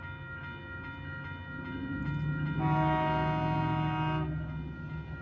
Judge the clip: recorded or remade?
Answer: recorded